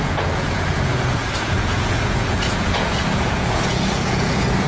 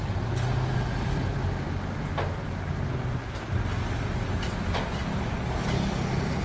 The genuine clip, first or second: second